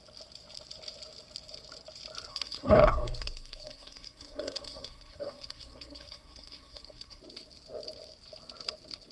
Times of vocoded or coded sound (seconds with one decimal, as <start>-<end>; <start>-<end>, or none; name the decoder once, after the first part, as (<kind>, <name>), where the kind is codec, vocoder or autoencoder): 2.3-7.2 (codec, SNAC)